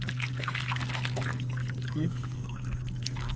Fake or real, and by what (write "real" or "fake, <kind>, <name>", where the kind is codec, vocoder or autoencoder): fake, codec, SNAC